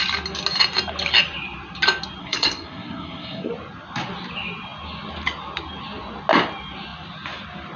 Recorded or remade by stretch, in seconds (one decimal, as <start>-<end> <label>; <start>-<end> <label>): 0.0-2.2 recorded; 2.2-3.5 remade; 3.5-7.8 recorded